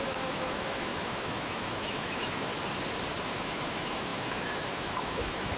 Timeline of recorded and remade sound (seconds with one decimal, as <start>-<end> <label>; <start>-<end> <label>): 0.0-2.5 remade; 2.5-3.2 recorded; 3.2-5.6 remade